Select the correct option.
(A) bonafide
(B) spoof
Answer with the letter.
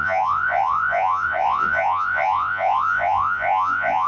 B